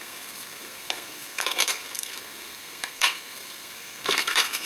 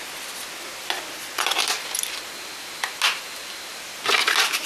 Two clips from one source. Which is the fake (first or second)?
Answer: first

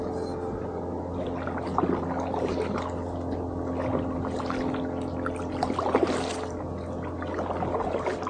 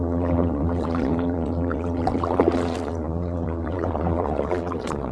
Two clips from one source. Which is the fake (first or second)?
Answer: second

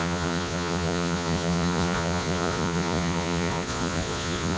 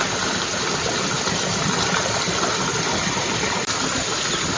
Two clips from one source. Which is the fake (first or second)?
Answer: first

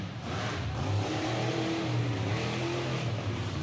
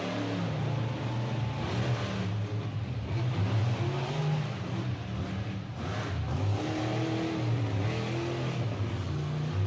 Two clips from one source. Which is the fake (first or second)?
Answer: first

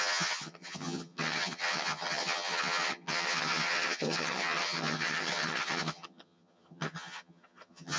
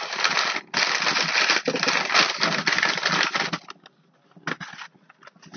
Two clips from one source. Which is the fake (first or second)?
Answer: first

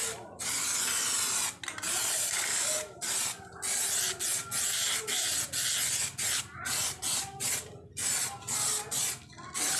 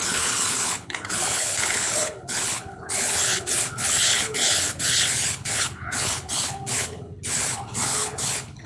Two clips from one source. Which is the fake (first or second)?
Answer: second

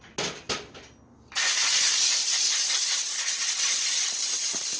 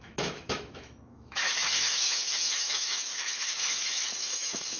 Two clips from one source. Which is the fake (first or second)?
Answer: second